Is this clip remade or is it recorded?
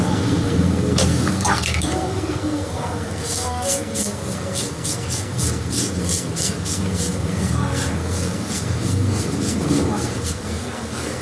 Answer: remade